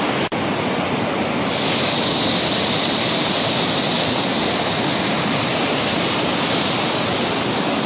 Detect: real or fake real